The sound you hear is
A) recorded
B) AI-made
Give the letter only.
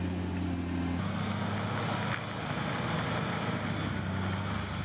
A